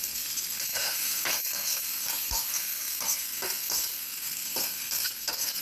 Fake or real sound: fake